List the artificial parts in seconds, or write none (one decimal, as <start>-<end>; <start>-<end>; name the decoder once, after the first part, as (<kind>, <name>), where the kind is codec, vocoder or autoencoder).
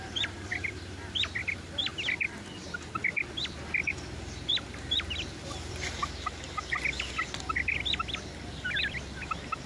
0.0-1.9 (vocoder, BigVGAN v2); 3.9-6.0; 8.4-9.7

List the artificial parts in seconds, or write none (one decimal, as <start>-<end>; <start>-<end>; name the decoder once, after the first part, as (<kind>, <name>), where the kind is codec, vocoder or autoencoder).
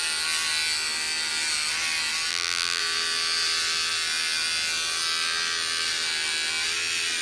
2.3-2.8 (vocoder, BigVGAN v2)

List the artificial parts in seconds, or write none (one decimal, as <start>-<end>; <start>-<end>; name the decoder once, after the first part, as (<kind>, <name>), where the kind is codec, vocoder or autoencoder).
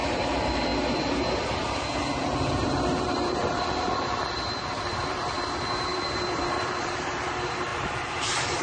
0.0-0.7 (vocoder, BigVGAN v2); 2.2-8.6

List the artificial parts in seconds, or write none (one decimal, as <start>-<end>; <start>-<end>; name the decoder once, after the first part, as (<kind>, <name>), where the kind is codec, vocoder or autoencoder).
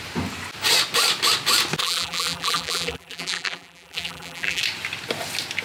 1.8-4.6 (vocoder, BigVGAN v2)